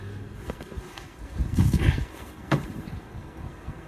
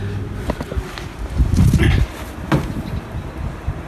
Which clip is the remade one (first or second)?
first